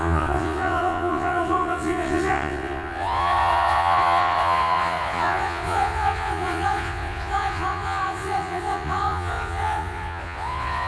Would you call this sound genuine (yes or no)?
no